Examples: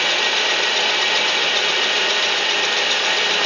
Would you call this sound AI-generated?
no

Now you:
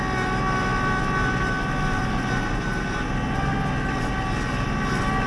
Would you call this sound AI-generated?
no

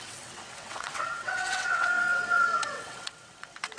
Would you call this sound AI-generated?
yes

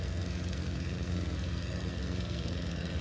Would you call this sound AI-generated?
yes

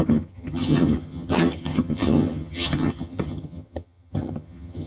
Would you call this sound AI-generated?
yes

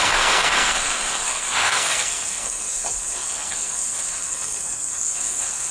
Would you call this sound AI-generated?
yes